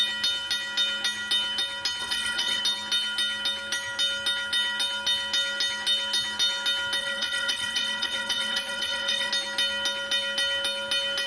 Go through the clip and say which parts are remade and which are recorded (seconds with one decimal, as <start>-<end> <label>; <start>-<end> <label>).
0.0-2.0 recorded; 2.0-2.6 remade; 2.6-7.0 recorded; 7.0-9.3 remade; 9.3-11.3 recorded